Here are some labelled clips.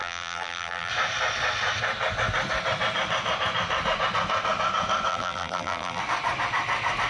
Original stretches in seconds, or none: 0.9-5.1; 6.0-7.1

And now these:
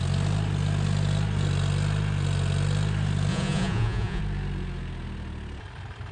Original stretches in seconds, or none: 0.0-3.3; 4.2-6.1

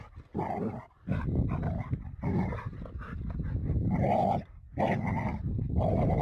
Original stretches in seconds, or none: 0.0-6.2

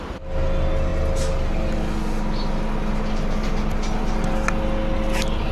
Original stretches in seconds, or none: 0.0-5.5

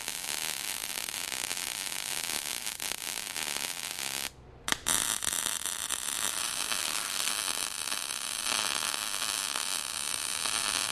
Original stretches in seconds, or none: 0.0-6.8; 7.3-10.9

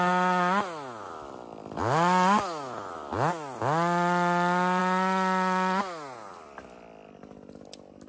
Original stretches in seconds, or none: 0.0-8.1